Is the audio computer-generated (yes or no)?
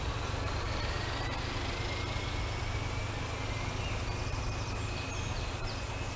no